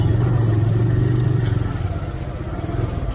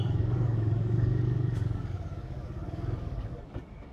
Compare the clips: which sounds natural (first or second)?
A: first